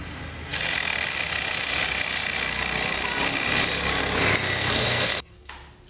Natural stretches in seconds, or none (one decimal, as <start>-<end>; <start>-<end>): 0.0-4.6; 5.5-5.9